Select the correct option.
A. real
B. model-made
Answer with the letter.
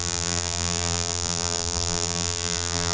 B